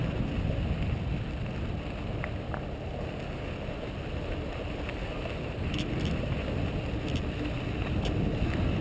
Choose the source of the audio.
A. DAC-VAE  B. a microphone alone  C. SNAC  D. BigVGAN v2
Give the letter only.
B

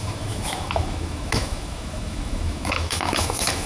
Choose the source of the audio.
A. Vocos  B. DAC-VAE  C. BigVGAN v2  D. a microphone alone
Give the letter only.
B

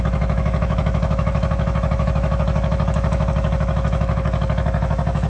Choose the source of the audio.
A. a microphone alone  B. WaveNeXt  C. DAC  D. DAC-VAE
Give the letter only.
D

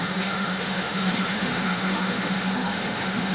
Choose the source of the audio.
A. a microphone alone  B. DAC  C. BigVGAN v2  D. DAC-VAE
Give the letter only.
D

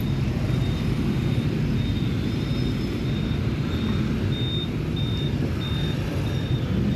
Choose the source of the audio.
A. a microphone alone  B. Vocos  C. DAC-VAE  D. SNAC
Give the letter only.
A